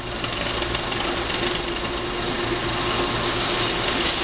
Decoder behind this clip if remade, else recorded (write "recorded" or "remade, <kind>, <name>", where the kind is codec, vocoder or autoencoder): recorded